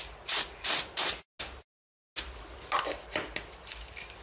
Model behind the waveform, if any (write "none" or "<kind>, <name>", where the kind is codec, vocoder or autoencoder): none